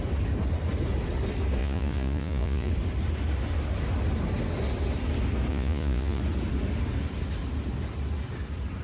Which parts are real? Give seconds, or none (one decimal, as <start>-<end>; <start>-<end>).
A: 0.0-1.6; 2.7-5.5; 6.2-8.8